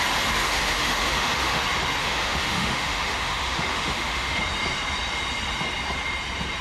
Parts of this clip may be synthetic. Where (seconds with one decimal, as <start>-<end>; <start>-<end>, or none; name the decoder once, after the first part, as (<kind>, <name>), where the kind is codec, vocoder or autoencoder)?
0.4-1.6 (autoencoder, DAC-VAE); 2.0-4.4